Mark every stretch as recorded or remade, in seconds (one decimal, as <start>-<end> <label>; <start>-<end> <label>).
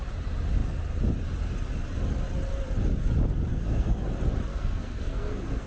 0.0-3.5 recorded; 3.5-4.0 remade; 4.0-4.5 recorded; 4.5-5.7 remade